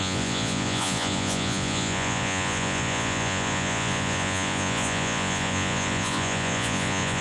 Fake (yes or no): yes